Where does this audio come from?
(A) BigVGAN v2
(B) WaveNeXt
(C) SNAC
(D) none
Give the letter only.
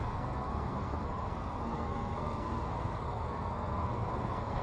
C